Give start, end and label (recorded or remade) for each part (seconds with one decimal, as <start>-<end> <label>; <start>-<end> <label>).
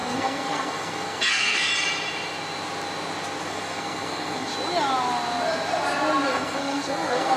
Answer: 0.0-1.7 remade; 1.7-3.4 recorded; 3.4-4.5 remade; 4.5-6.3 recorded; 6.3-7.4 remade